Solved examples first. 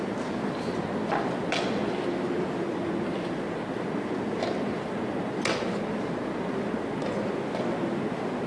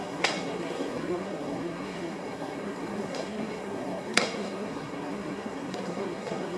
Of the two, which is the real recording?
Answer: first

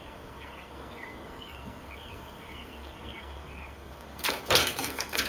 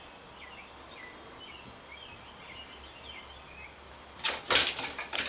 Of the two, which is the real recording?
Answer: second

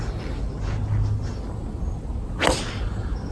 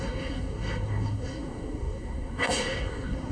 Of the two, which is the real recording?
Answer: first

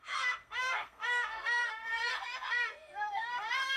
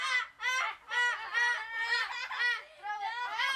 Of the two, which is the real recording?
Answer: second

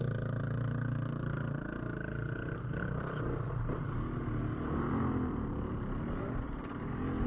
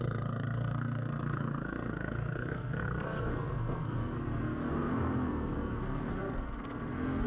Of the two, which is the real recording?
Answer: first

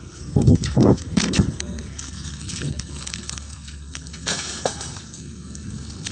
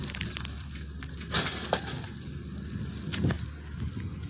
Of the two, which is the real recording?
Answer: second